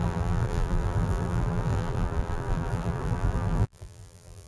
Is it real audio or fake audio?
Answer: fake